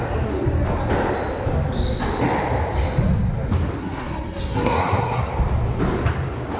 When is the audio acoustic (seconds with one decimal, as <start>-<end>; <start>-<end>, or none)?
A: 0.0-3.8; 5.3-6.6